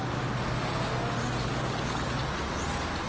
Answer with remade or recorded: recorded